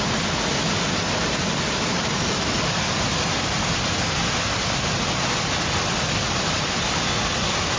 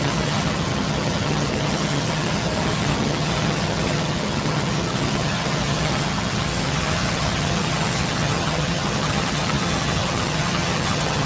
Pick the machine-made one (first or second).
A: second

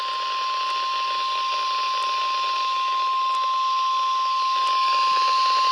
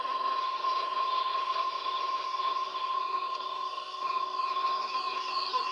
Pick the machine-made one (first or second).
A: second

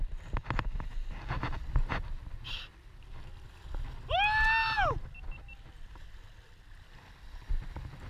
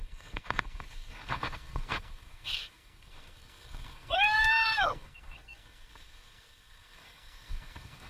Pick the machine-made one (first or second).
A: second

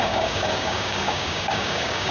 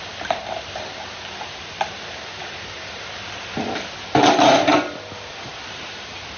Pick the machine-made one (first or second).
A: first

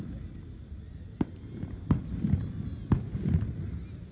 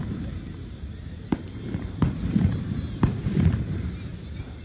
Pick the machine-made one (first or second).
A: second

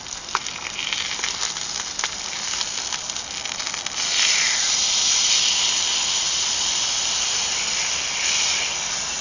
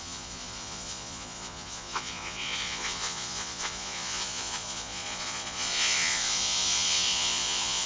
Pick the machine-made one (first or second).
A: second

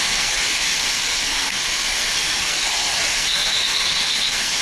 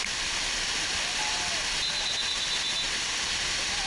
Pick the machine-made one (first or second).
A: first